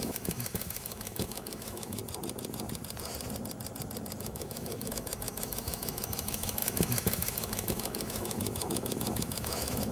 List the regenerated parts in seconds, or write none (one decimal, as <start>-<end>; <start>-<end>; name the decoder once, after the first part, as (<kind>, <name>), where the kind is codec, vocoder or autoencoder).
0.0-2.0 (autoencoder, DAC-VAE); 4.2-9.9